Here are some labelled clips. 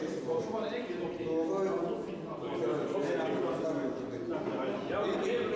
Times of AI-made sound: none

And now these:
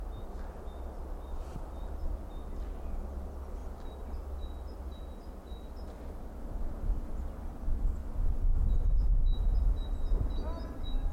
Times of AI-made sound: none

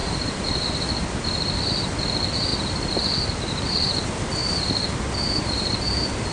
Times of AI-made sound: 0.0-0.6 (vocoder, BigVGAN v2); 4.4-6.3

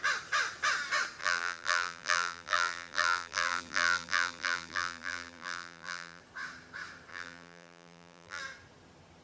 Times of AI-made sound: 1.2-6.2 (vocoder, BigVGAN v2); 7.1-8.4

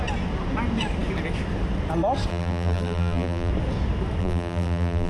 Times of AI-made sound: 2.3-3.5 (vocoder, BigVGAN v2); 4.2-5.1